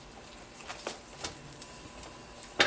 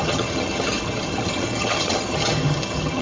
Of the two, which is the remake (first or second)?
second